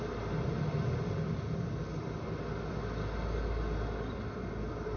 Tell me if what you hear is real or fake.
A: real